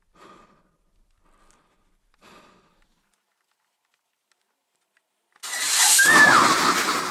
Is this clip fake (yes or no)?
no